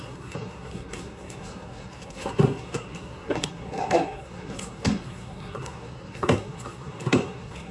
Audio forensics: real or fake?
fake